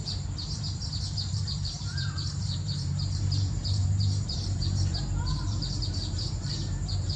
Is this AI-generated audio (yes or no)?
yes